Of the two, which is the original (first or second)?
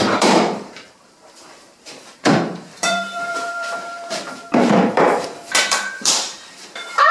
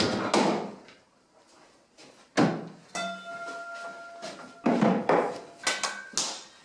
second